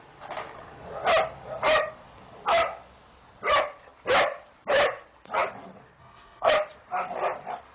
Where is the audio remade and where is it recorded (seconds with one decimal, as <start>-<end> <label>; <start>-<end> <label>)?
0.0-6.0 recorded; 6.0-6.5 remade; 6.5-7.7 recorded